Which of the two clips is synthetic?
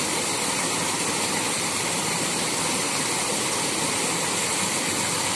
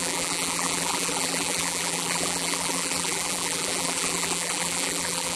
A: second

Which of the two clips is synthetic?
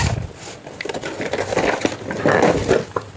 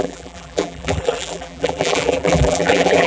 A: second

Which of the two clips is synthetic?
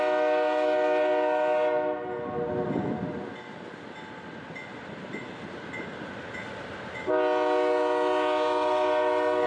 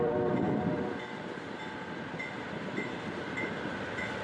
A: second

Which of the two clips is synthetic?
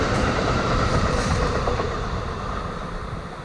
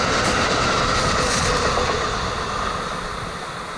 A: first